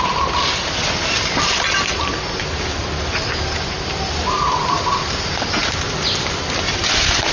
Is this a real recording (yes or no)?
yes